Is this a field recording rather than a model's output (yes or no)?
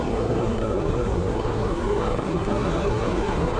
no